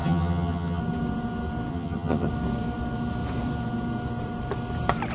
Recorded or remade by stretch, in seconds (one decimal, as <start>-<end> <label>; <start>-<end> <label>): 0.0-0.8 remade; 0.8-1.7 recorded; 1.7-2.3 remade; 2.3-5.1 recorded